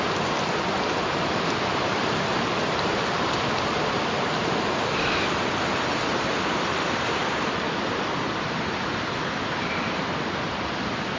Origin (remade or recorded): recorded